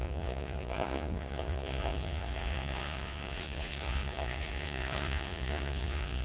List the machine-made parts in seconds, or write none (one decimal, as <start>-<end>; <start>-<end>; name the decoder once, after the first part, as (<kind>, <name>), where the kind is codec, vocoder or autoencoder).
0.0-6.2 (vocoder, Vocos)